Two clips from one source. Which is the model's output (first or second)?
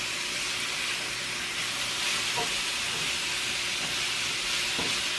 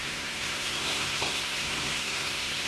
second